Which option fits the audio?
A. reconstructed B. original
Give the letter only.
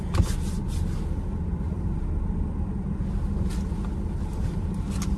B